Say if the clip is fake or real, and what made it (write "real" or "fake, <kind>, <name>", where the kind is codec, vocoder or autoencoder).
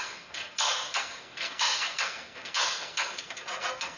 fake, codec, SNAC